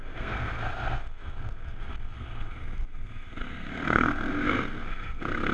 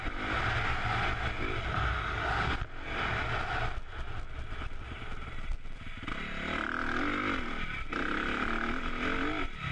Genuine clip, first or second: second